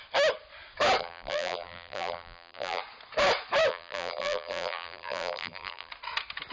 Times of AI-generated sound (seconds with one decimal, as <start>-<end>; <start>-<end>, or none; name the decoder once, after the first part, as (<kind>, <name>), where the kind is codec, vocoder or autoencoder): 1.0-2.8 (vocoder, BigVGAN v2); 3.7-5.9